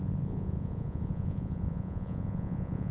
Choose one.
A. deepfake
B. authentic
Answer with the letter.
A